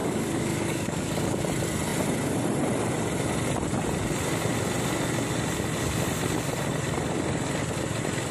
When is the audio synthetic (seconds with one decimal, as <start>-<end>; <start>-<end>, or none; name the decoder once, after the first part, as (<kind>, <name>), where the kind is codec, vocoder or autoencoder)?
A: 0.0-1.4 (codec, DAC)